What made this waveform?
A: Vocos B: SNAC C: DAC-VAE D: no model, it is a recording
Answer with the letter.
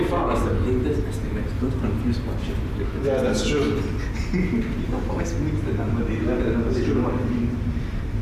D